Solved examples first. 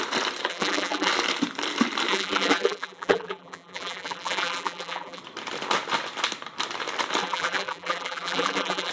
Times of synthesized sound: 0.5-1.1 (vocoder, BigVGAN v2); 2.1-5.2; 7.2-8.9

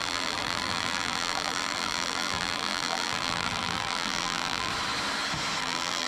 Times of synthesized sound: 0.0-4.7 (vocoder, BigVGAN v2); 5.6-6.1

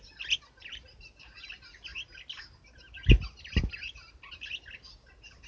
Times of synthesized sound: none